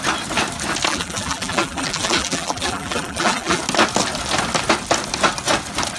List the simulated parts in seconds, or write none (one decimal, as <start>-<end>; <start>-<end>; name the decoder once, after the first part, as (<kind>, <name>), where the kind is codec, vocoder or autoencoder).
0.9-3.6 (vocoder, BigVGAN v2)